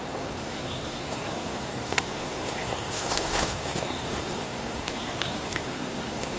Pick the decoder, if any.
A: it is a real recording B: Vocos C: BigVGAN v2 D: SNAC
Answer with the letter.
D